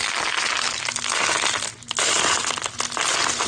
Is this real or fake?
real